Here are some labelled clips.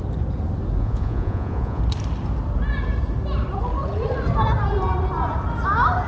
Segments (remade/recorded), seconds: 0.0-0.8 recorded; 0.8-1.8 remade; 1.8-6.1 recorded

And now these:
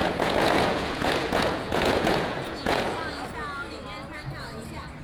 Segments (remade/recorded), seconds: 0.0-3.0 remade; 3.0-5.0 recorded

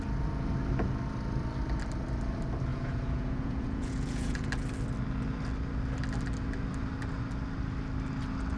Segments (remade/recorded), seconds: 0.0-2.7 recorded; 2.7-4.5 remade; 4.5-8.6 recorded

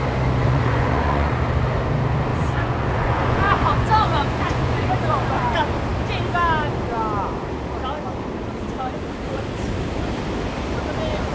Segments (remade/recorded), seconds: 0.0-0.4 recorded; 0.4-1.3 remade; 1.3-2.3 recorded; 2.3-4.9 remade; 4.9-11.3 recorded

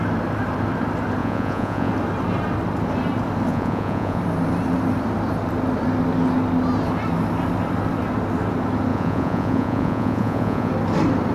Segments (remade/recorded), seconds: 0.0-1.2 recorded; 1.2-1.9 remade; 1.9-3.5 recorded; 3.5-4.2 remade; 4.2-8.9 recorded; 8.9-10.7 remade; 10.7-11.3 recorded

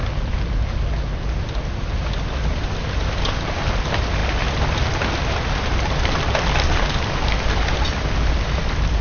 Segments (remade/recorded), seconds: 0.0-9.0 recorded

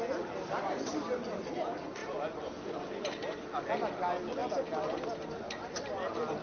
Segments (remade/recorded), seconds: 0.0-6.4 recorded

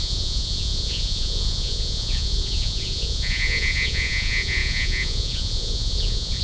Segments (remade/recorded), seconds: 0.0-6.4 remade